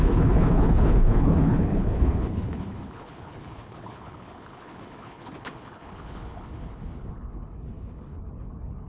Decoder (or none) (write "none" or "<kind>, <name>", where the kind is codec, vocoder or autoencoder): codec, HILCodec